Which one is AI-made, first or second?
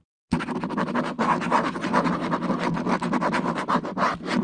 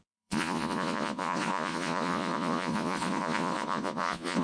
second